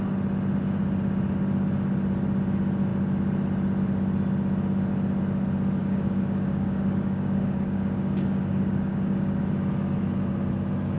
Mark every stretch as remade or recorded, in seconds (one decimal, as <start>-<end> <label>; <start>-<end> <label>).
0.0-5.8 recorded; 5.8-9.4 remade; 9.4-11.0 recorded

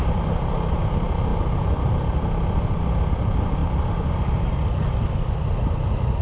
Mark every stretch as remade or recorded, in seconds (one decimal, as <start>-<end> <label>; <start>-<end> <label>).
0.0-6.2 recorded

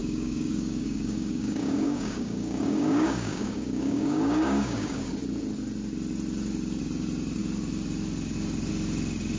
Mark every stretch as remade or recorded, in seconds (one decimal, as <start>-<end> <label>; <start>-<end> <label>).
0.0-5.1 remade; 5.1-9.4 recorded